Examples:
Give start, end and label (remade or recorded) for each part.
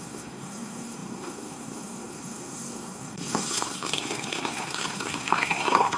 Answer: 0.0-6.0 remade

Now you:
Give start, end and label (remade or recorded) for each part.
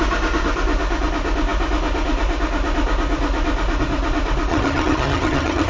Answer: 0.0-4.5 recorded; 4.5-5.7 remade